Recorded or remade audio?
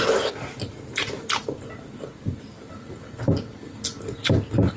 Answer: remade